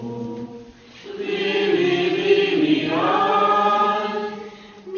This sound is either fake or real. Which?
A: real